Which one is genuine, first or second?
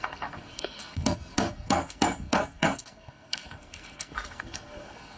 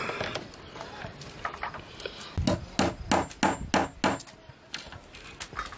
second